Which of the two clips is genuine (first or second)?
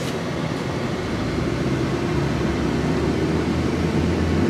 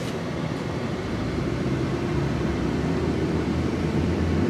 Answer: first